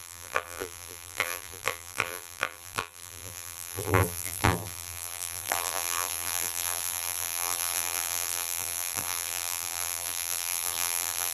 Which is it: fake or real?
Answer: fake